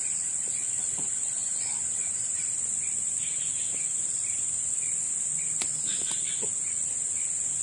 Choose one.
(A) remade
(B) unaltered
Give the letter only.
B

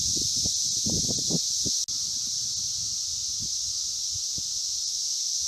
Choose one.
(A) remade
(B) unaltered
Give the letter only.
B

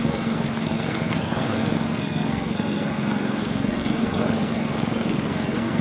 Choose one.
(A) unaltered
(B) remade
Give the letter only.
B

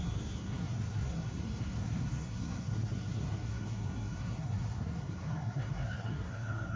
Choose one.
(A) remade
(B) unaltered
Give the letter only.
A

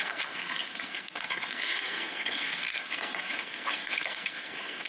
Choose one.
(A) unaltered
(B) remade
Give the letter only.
B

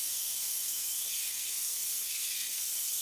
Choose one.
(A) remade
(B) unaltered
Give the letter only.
A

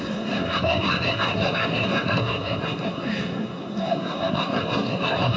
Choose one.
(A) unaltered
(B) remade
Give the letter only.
B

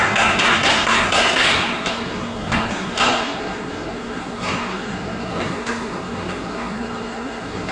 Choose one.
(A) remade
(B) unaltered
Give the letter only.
A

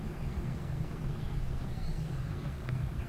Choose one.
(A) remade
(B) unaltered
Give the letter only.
A